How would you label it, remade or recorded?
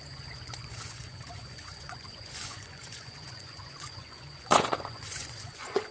remade